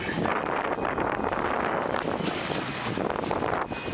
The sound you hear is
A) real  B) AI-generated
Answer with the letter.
A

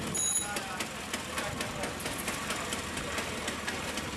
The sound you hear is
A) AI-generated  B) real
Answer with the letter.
B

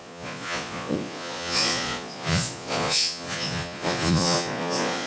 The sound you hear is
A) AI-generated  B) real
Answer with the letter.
A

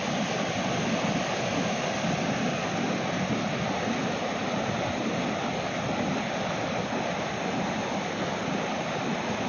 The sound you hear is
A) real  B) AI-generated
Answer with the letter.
A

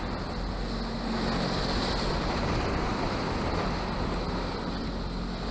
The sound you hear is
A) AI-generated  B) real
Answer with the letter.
B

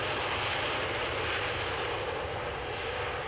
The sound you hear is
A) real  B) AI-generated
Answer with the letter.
A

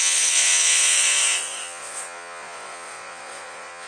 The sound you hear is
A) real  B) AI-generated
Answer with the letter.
B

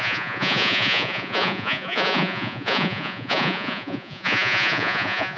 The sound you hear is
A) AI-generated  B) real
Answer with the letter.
A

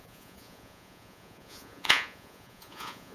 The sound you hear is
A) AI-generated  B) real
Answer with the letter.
A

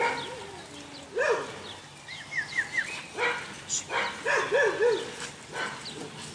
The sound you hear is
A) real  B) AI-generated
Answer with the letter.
A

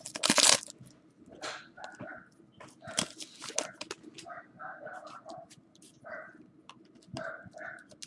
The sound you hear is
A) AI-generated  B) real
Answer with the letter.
B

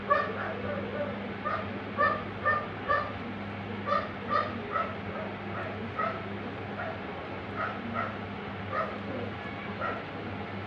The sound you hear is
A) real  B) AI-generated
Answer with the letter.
A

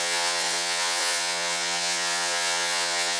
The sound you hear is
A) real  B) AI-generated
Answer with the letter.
B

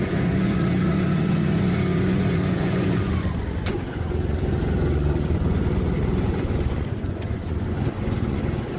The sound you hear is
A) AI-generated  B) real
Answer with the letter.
A